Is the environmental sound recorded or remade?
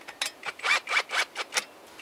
recorded